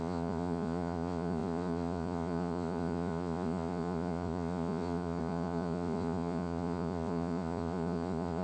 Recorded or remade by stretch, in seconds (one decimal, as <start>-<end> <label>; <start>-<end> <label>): 0.0-8.4 remade